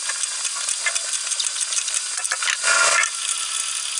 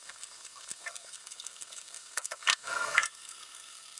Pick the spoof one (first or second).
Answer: second